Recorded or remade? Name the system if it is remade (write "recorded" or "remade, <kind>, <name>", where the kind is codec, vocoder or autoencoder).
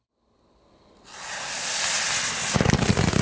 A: recorded